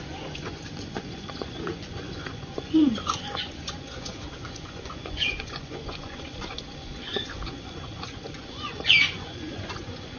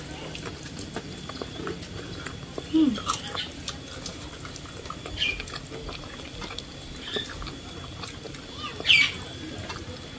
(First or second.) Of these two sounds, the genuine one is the second